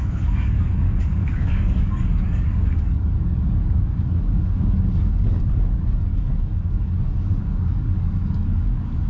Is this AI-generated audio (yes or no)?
yes